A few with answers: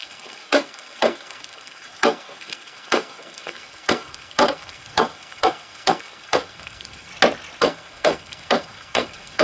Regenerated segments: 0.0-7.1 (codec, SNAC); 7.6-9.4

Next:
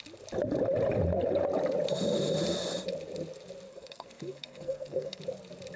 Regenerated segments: 3.7-5.2 (codec, SNAC)

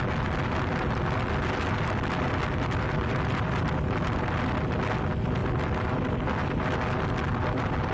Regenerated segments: none

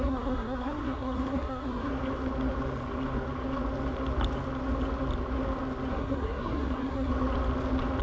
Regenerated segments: 0.0-1.9 (codec, SNAC); 5.9-7.1

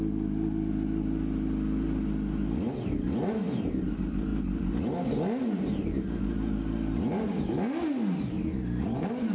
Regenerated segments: none

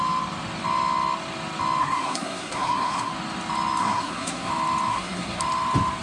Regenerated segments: 1.8-3.1 (codec, SNAC); 3.8-4.5; 4.9-5.4

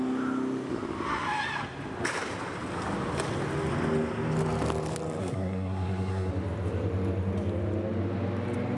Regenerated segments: 5.2-6.3 (codec, SNAC)